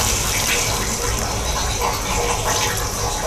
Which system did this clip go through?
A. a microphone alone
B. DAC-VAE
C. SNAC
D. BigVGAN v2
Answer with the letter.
A